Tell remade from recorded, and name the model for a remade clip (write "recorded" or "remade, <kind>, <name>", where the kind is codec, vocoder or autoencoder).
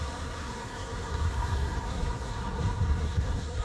remade, codec, SNAC